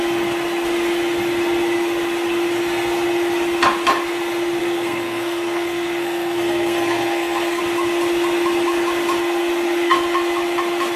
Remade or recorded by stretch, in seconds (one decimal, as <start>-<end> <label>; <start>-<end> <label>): 0.0-4.6 recorded; 4.6-7.6 remade; 7.6-11.0 recorded